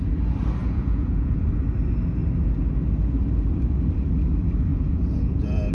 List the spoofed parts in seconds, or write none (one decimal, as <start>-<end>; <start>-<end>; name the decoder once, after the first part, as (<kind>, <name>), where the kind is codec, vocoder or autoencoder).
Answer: 0.6-1.5 (vocoder, Vocos); 4.7-5.7